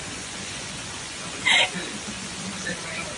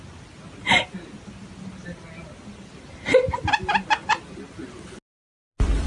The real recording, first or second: second